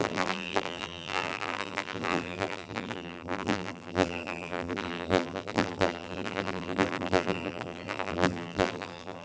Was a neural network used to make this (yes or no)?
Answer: yes